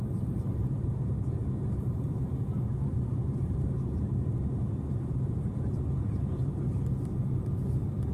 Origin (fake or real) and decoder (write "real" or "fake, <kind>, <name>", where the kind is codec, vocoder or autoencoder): fake, vocoder, BigVGAN v2